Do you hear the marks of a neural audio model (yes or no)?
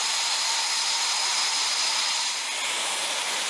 no